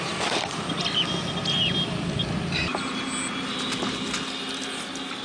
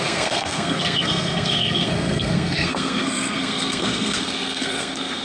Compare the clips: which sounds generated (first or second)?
second